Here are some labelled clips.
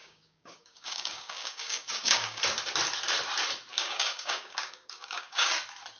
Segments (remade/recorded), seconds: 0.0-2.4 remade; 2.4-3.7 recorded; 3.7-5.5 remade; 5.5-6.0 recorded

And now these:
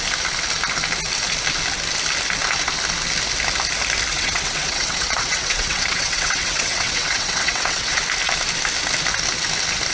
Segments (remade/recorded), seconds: 0.0-4.1 recorded; 4.1-8.0 remade; 8.0-9.9 recorded